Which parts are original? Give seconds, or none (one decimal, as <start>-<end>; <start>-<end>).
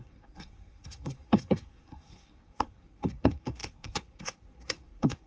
none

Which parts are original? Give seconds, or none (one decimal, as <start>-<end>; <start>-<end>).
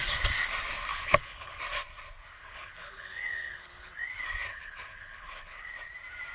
0.0-0.9; 1.6-2.4; 3.9-4.5; 5.7-6.3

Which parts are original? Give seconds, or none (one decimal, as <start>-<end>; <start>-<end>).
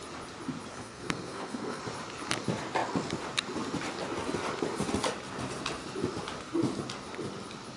0.0-0.7; 1.8-7.8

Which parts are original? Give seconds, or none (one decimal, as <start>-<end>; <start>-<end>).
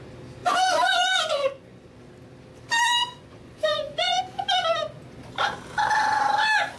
0.0-0.4; 2.0-3.0; 4.2-6.8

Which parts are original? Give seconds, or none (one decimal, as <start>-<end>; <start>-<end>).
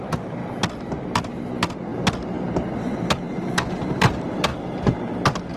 0.4-3.7; 4.5-5.6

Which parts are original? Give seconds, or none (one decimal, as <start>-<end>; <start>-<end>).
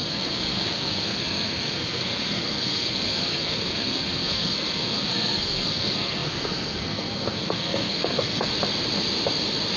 8.5-9.8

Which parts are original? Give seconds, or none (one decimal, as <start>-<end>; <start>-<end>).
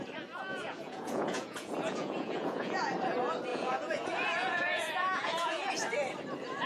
0.0-0.5; 2.9-3.5; 5.7-6.7